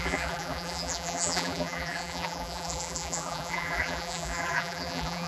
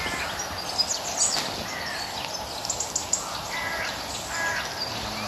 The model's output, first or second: first